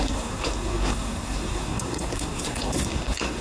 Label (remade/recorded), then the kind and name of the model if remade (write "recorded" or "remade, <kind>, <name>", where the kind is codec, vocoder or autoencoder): remade, codec, SNAC